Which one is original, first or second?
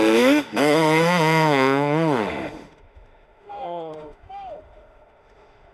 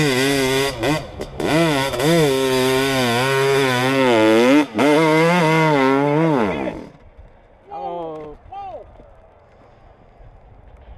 second